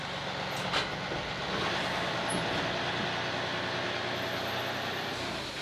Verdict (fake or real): real